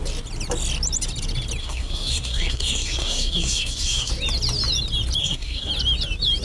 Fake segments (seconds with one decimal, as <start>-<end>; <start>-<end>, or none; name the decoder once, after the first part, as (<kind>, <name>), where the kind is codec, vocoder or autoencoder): 1.6-4.1 (codec, SNAC); 5.2-5.7